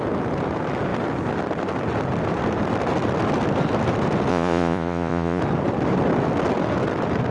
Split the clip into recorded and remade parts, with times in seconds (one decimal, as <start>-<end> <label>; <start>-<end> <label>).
0.0-4.3 recorded; 4.3-5.4 remade; 5.4-7.3 recorded